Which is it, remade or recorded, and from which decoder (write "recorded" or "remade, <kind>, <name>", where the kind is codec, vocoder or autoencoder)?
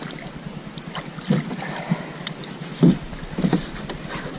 recorded